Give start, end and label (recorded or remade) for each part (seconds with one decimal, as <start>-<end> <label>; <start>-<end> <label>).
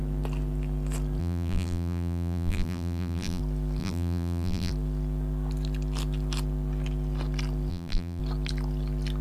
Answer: 0.0-1.2 recorded; 1.2-3.4 remade; 3.4-3.8 recorded; 3.8-4.7 remade; 4.7-7.7 recorded; 7.7-8.2 remade; 8.2-9.2 recorded